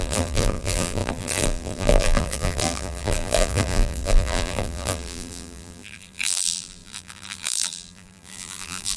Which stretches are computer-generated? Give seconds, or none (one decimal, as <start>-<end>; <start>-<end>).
0.0-9.0